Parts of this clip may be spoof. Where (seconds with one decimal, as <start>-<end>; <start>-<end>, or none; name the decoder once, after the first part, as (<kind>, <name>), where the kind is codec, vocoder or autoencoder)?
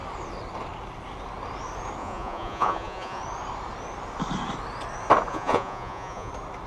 2.0-3.2 (vocoder, Vocos); 5.3-6.3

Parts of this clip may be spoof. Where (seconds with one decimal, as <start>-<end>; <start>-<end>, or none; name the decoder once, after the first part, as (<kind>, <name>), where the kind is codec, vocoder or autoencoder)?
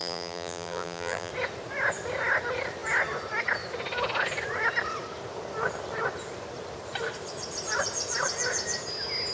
0.0-1.3 (vocoder, BigVGAN v2)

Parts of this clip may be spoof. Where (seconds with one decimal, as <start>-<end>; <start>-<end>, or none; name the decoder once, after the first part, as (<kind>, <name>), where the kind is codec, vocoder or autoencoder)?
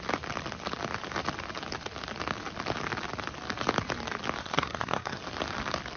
4.4-5.2 (codec, SNAC)